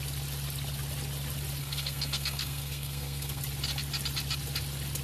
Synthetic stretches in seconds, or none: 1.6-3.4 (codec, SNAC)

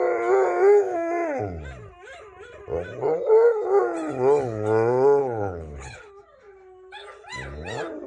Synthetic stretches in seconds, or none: 5.2-6.1 (codec, HILCodec)

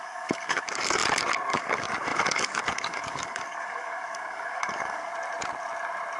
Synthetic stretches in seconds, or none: 0.0-1.0 (codec, DAC); 1.5-5.1